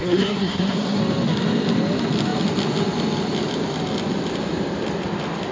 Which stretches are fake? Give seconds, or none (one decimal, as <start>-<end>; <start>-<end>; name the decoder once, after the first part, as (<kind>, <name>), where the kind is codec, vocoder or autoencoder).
0.0-1.0 (codec, SNAC)